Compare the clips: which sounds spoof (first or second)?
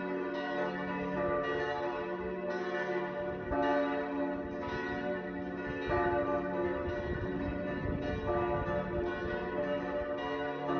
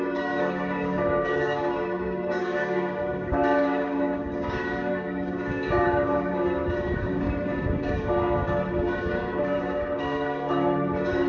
second